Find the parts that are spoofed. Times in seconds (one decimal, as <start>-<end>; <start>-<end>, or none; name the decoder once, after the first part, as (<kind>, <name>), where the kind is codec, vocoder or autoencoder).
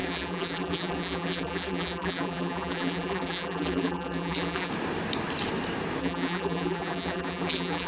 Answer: 0.0-4.7 (vocoder, BigVGAN v2); 6.0-7.9